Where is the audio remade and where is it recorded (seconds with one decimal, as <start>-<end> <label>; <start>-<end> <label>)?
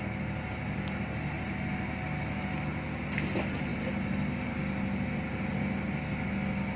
0.0-6.8 recorded